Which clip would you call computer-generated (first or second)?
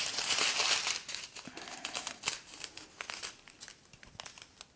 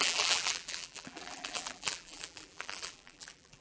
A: second